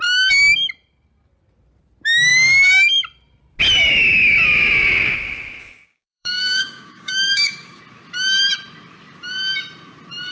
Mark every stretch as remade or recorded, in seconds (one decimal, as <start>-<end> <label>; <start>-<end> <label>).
0.0-5.6 recorded; 5.6-7.8 remade; 7.8-10.3 recorded